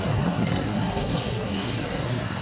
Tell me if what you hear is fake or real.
fake